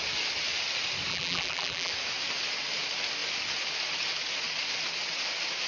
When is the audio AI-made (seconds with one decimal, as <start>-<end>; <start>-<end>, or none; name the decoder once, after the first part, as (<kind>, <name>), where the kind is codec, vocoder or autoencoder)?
1.1-1.9 (vocoder, BigVGAN v2)